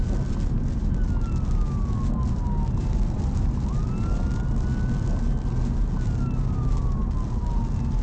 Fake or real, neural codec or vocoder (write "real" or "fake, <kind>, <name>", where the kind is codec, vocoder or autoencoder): real